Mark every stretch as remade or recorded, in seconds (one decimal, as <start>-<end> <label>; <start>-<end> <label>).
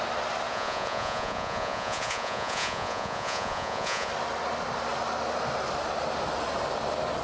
0.0-0.5 recorded; 0.5-4.1 remade; 4.1-7.2 recorded